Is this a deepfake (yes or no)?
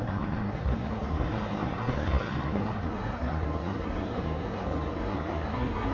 yes